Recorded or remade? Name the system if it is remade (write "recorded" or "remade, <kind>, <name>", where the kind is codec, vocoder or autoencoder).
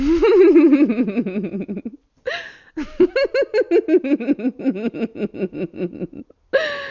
recorded